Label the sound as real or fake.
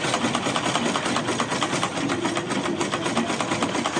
real